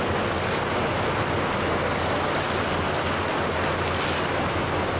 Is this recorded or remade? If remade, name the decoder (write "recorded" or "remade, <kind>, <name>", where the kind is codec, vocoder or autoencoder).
recorded